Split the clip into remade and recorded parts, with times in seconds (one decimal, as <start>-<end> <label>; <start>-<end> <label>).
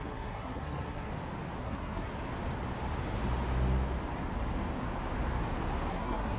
0.0-1.1 remade; 1.1-1.6 recorded; 1.6-2.1 remade; 2.1-5.9 recorded; 5.9-6.4 remade